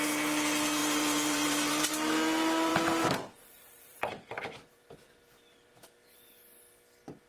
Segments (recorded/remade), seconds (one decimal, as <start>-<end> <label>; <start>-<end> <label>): 0.0-0.8 recorded; 0.8-1.9 remade; 1.9-2.7 recorded; 2.7-6.4 remade; 6.4-7.3 recorded